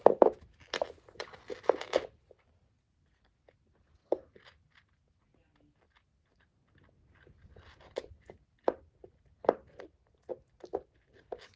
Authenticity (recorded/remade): recorded